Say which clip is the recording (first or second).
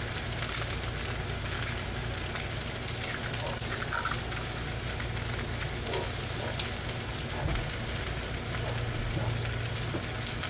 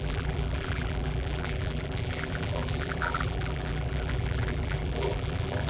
first